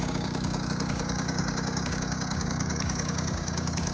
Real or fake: fake